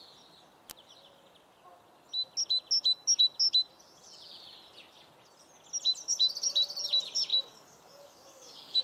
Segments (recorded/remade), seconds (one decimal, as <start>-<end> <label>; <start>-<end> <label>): 0.0-7.3 recorded; 7.3-8.8 remade